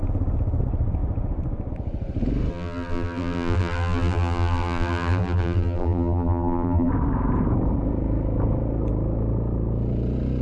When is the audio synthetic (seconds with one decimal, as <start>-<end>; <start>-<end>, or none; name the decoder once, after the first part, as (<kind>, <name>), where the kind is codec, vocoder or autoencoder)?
2.5-6.9 (vocoder, BigVGAN v2)